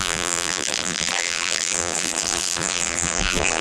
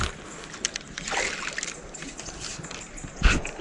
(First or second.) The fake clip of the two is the first